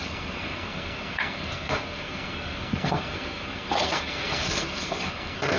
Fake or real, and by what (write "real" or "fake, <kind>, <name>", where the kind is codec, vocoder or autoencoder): fake, codec, SNAC